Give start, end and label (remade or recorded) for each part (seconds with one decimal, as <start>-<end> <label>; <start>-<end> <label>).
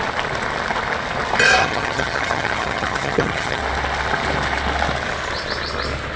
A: 0.0-1.6 recorded; 1.6-3.6 remade; 3.6-6.2 recorded